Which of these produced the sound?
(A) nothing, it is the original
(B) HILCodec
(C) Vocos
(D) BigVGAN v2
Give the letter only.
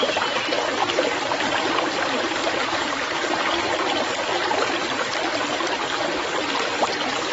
A